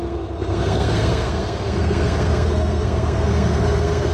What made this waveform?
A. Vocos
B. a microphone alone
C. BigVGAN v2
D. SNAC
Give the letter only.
D